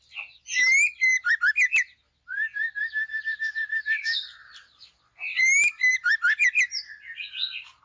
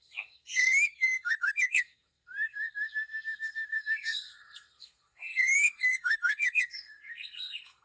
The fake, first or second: second